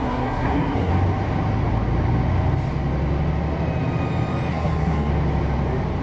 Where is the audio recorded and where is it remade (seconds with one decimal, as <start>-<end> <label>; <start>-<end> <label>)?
0.0-0.9 remade; 0.9-4.5 recorded; 4.5-5.1 remade; 5.1-6.0 recorded